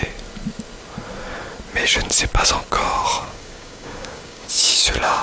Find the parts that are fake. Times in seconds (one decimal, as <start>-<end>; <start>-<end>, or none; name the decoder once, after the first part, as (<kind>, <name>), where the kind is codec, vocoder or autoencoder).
3.1-5.2 (codec, DAC)